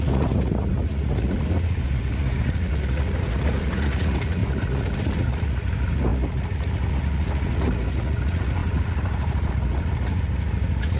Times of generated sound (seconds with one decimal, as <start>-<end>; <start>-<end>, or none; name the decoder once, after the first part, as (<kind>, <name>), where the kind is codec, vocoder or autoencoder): 0.0-11.0 (vocoder, Vocos)